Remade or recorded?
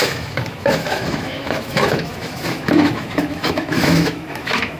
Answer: remade